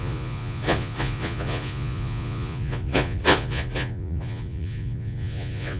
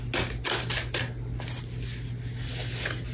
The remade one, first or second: first